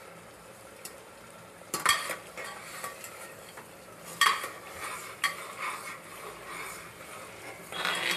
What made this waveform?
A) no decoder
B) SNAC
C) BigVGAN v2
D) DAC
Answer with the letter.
A